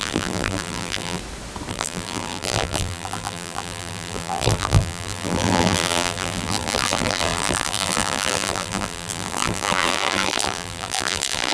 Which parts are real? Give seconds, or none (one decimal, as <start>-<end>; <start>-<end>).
1.2-1.7